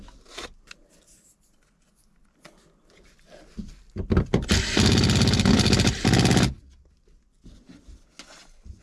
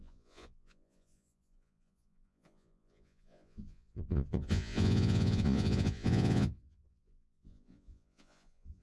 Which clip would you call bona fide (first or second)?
first